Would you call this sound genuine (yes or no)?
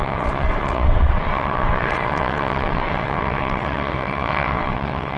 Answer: no